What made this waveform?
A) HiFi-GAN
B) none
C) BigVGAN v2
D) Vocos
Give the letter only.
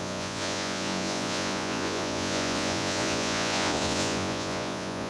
D